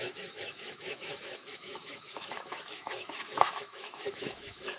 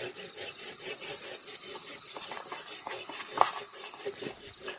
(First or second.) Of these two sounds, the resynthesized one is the first